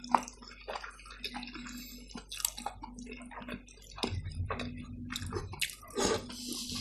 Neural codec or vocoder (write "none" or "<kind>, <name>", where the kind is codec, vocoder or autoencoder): none